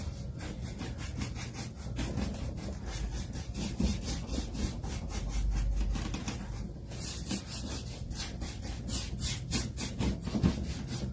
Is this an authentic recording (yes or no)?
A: yes